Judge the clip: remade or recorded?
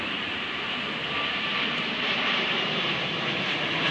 remade